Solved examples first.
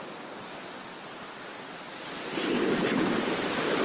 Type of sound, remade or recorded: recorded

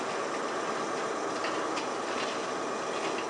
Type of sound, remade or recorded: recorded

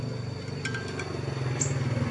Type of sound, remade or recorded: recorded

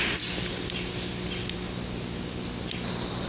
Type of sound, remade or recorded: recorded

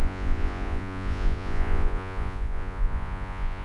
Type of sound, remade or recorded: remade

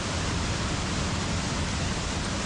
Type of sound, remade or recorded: recorded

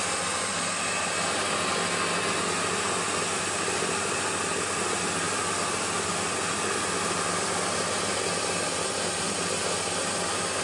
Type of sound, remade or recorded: recorded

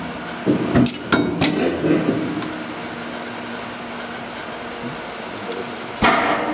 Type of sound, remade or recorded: recorded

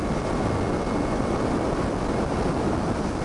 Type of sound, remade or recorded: recorded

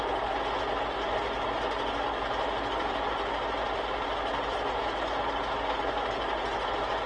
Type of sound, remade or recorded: recorded